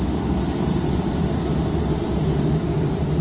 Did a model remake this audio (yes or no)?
no